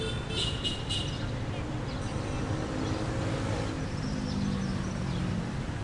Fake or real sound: real